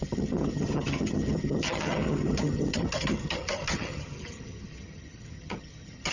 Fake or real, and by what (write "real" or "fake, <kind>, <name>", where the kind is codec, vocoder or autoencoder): fake, vocoder, HiFi-GAN